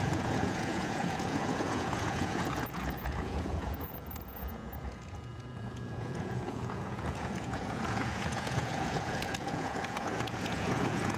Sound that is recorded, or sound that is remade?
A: remade